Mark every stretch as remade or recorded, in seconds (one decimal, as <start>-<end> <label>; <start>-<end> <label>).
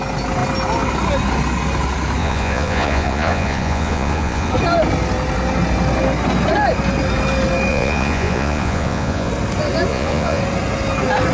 0.0-2.2 recorded; 2.2-4.5 remade; 4.5-7.7 recorded; 7.7-9.3 remade; 9.3-9.9 recorded; 9.9-10.4 remade; 10.4-11.3 recorded